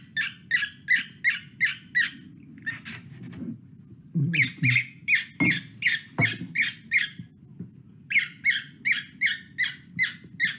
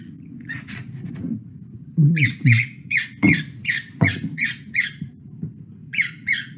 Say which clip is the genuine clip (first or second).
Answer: first